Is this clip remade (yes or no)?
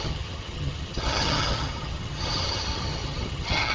yes